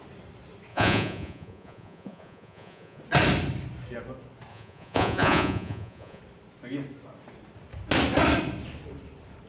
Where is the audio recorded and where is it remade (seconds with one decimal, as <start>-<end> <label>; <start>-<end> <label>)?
0.0-0.7 recorded; 0.7-3.0 remade; 3.0-4.5 recorded; 4.5-6.2 remade; 6.2-9.5 recorded